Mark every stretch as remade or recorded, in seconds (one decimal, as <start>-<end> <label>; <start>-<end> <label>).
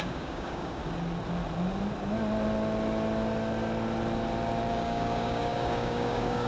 0.0-0.8 remade; 0.8-4.7 recorded; 4.7-6.5 remade